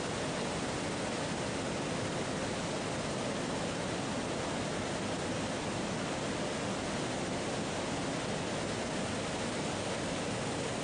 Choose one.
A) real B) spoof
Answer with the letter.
A